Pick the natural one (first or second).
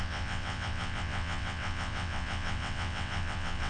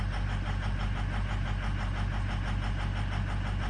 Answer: second